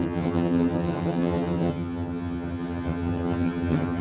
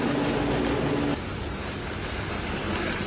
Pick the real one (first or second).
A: second